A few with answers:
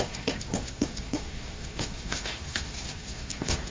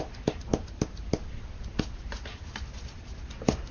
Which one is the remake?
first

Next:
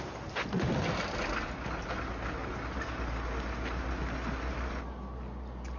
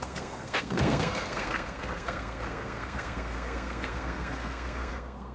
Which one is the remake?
second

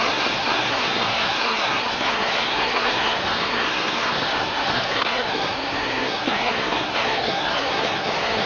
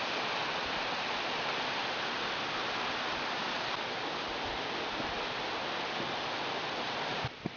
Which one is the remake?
first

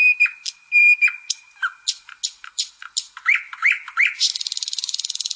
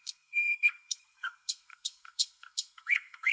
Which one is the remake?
second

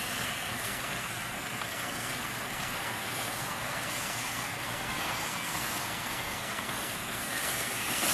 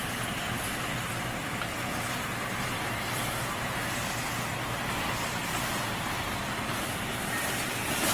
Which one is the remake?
first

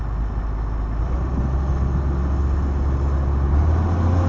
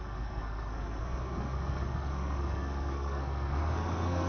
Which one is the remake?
second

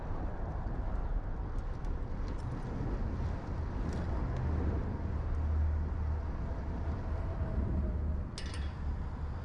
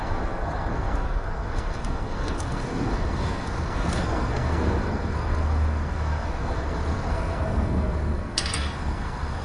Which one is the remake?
second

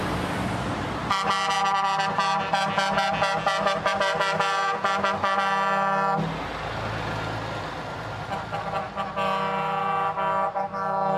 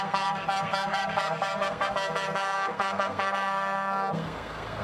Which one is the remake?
second